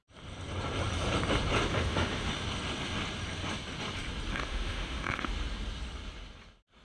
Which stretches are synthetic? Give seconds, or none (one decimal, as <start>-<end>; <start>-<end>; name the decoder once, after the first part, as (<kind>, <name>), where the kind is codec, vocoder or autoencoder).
1.7-2.3 (autoencoder, DAC-VAE); 4.3-5.3